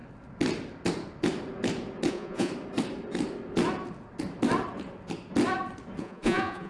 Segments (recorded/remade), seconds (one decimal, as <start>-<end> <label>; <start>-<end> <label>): 0.0-2.1 recorded; 2.1-2.5 remade; 2.5-6.0 recorded; 6.0-6.7 remade